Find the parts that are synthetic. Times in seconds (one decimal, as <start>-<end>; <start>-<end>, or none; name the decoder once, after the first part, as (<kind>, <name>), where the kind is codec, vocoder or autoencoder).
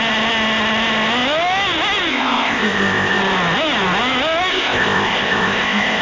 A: 2.1-3.2 (codec, ZipCodec); 4.5-6.0